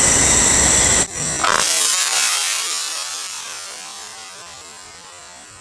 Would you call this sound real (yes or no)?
no